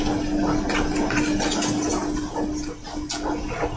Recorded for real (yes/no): yes